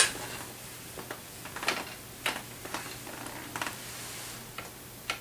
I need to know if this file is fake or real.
real